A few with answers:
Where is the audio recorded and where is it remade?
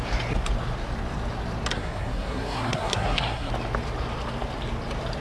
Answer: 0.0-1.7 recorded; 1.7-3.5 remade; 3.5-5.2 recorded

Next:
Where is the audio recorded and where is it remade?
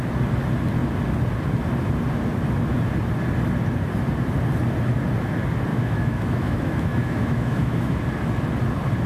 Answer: 0.0-5.7 recorded; 5.7-8.0 remade; 8.0-9.1 recorded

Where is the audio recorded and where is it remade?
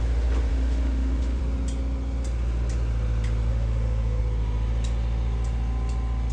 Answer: 0.0-0.5 recorded; 0.5-1.4 remade; 1.4-3.5 recorded; 3.5-4.2 remade; 4.2-6.3 recorded